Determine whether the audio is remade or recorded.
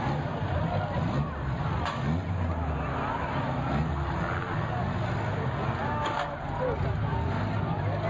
recorded